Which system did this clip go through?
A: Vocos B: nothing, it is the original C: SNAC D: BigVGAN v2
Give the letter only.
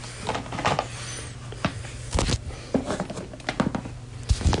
B